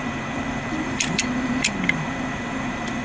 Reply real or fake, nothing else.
fake